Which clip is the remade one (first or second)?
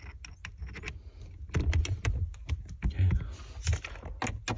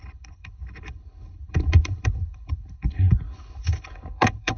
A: second